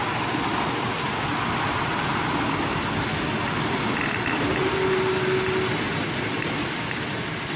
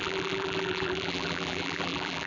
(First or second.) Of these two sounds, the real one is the first